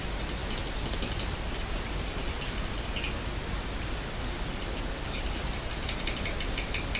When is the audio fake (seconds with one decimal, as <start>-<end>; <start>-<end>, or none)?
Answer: none